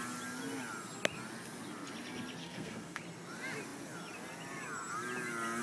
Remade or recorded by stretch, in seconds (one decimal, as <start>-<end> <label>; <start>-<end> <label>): 0.0-2.4 recorded; 2.4-3.0 remade; 3.0-5.6 recorded